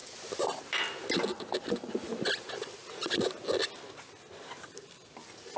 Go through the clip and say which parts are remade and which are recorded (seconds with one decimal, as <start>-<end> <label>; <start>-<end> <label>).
0.0-5.6 recorded